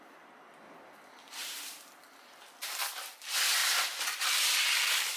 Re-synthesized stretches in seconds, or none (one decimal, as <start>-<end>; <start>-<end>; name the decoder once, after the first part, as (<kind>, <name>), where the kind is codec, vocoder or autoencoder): 1.2-1.9 (vocoder, BigVGAN v2); 3.6-5.2